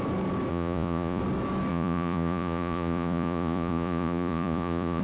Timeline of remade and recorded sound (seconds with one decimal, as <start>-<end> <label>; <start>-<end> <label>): 0.0-0.5 recorded; 0.5-1.2 remade; 1.2-1.7 recorded; 1.7-5.0 remade